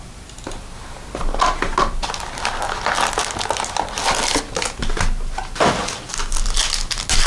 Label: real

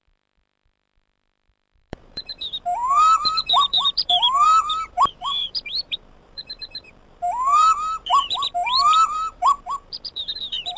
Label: fake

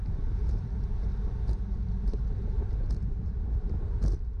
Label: fake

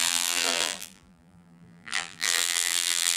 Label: fake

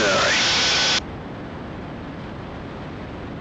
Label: real